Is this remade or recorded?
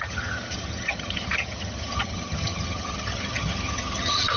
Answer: remade